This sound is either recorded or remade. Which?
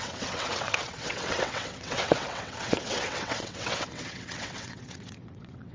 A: remade